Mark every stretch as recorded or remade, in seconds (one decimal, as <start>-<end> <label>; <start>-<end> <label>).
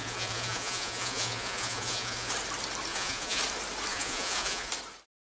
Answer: 0.0-2.3 remade; 2.3-2.9 recorded; 2.9-3.4 remade; 3.4-3.9 recorded; 3.9-4.7 remade; 4.7-5.3 recorded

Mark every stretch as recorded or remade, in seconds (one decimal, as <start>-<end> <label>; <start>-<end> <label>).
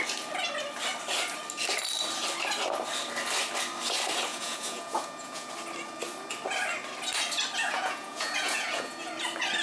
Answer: 0.0-4.3 recorded; 4.3-5.5 remade; 5.5-7.6 recorded; 7.6-9.1 remade; 9.1-9.6 recorded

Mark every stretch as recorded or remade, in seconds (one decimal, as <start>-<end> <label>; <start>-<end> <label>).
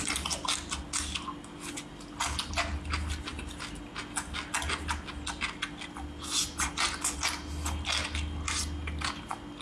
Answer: 0.0-9.6 recorded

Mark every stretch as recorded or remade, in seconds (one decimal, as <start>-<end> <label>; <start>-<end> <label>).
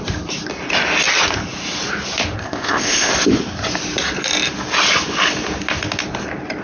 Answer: 0.0-2.4 recorded; 2.4-3.1 remade; 3.1-6.6 recorded